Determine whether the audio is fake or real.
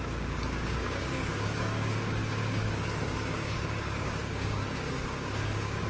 fake